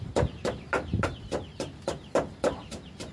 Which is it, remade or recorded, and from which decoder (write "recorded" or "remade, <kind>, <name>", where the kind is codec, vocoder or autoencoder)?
recorded